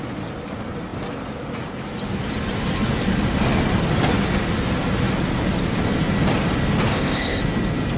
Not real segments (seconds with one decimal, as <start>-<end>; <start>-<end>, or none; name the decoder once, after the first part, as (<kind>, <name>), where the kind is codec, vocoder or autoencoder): 6.9-7.4 (codec, ZipCodec)